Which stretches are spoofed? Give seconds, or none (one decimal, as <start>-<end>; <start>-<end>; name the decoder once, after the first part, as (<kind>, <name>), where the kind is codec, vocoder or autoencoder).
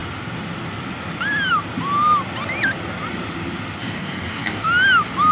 3.8-4.6 (codec, DAC)